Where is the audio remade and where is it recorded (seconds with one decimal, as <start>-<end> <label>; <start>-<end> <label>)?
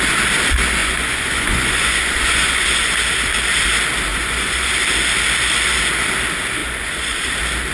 0.0-0.8 recorded; 0.8-2.9 remade; 2.9-4.1 recorded; 4.1-4.7 remade; 4.7-6.6 recorded; 6.6-7.3 remade; 7.3-7.7 recorded